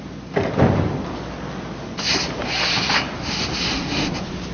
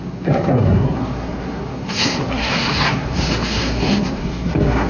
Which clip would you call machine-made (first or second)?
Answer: second